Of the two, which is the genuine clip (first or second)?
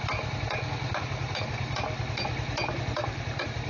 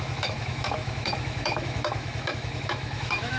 first